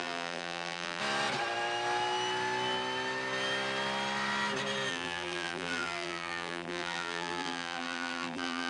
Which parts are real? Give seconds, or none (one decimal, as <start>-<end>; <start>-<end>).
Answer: 1.0-4.9